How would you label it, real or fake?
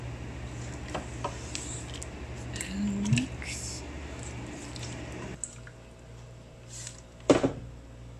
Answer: real